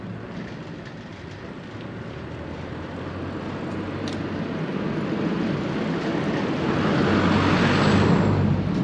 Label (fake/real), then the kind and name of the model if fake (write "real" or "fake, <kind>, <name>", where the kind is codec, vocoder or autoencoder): real